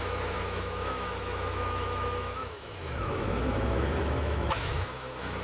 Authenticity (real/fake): fake